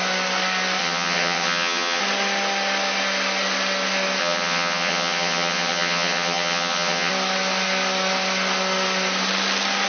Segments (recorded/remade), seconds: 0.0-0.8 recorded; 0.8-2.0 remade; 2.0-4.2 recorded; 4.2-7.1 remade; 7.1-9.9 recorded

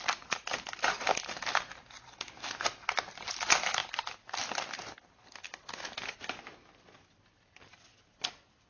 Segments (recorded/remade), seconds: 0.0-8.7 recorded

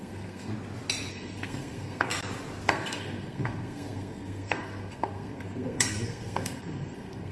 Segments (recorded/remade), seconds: 0.0-0.5 remade; 0.5-1.1 recorded; 1.1-2.1 remade; 2.1-2.7 recorded; 2.7-7.3 remade

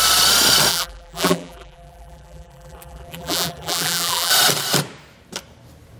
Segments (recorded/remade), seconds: 0.0-0.7 recorded; 0.7-4.3 remade; 4.3-6.0 recorded